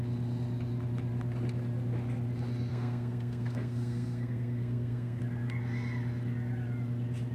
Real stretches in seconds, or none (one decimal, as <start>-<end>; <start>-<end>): 0.0-2.7; 5.2-7.3